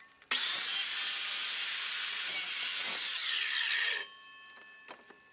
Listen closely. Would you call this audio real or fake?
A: real